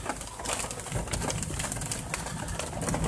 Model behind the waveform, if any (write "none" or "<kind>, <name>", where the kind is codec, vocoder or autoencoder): none